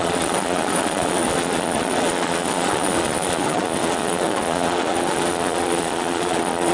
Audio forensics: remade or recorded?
remade